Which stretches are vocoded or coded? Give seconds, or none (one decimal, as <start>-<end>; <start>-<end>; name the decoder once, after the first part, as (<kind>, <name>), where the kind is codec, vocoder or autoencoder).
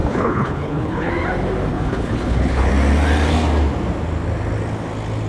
0.0-1.1 (codec, HILCodec); 1.7-2.7